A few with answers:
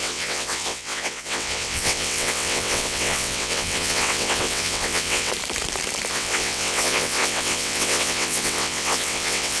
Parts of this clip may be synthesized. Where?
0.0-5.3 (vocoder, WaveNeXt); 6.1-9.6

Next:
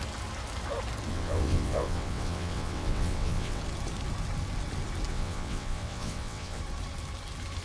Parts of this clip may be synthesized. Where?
1.1-3.6 (vocoder, WaveNeXt); 5.1-6.6